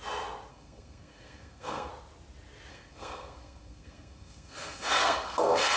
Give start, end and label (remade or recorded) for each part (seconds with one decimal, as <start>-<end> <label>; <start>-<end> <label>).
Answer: 0.0-0.5 recorded; 0.5-1.9 remade; 1.9-2.7 recorded; 2.7-5.8 remade